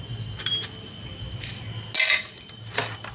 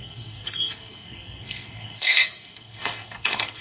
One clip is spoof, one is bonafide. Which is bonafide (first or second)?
first